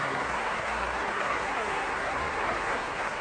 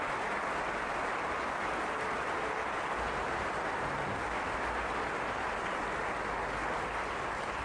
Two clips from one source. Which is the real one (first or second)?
second